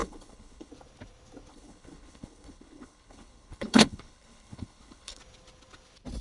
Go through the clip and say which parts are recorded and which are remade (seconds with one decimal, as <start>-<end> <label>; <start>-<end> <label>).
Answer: 0.0-0.7 remade; 0.7-1.5 recorded; 1.5-5.2 remade; 5.2-6.2 recorded